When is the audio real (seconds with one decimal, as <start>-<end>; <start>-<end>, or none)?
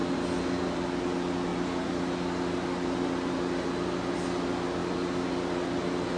0.0-6.2